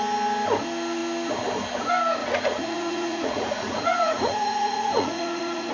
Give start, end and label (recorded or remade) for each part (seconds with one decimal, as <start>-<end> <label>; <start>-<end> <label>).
0.0-2.2 recorded; 2.2-5.7 remade